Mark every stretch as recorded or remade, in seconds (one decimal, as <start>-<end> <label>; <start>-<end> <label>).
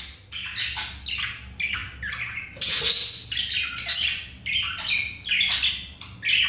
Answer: 0.0-6.5 recorded